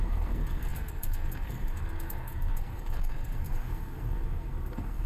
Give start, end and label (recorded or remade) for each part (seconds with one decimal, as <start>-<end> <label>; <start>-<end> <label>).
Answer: 0.0-5.1 remade